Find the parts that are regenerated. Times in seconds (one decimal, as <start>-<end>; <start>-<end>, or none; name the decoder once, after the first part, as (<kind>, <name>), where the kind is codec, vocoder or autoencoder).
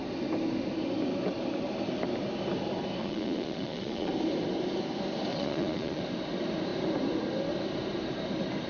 3.0-4.1 (vocoder, Vocos); 5.3-6.0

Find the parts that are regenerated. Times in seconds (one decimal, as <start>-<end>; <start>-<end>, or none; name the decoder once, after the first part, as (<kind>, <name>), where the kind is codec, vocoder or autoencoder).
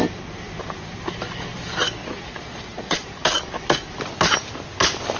2.0-3.1 (vocoder, Vocos)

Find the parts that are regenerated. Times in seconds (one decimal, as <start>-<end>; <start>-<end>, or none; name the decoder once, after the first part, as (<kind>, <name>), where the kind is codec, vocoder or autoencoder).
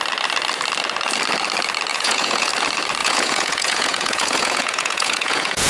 1.9-2.5 (vocoder, Vocos); 3.0-5.7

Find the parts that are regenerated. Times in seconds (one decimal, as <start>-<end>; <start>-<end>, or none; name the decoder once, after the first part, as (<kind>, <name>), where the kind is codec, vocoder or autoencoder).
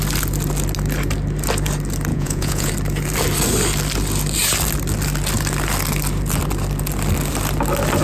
2.1-2.7 (vocoder, Vocos)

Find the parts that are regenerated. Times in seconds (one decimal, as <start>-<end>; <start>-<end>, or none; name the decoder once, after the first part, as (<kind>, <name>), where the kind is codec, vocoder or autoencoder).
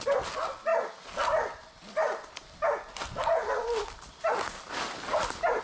none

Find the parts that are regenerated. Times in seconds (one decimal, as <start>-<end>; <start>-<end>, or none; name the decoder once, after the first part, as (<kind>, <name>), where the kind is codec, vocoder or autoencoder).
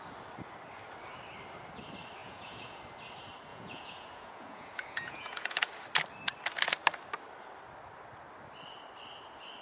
2.2-2.8 (vocoder, Vocos); 3.5-5.7